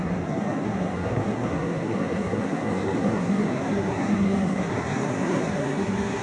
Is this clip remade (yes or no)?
yes